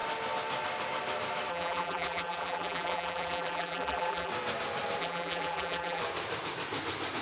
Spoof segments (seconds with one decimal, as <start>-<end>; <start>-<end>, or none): 1.5-4.3; 5.0-6.0